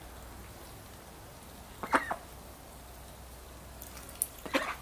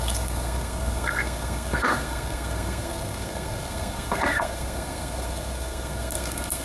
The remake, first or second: second